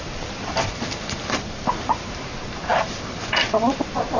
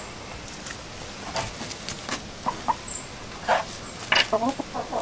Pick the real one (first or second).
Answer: second